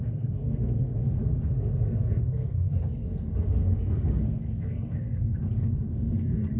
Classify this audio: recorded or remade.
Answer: remade